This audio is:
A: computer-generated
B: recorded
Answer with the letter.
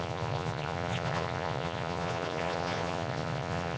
A